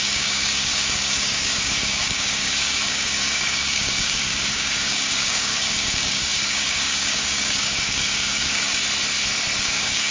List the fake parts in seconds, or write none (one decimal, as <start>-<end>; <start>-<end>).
0.0-8.8; 9.6-10.1